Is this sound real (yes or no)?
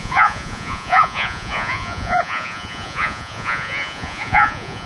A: no